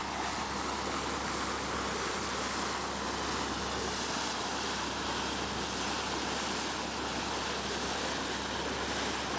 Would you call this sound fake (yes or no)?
no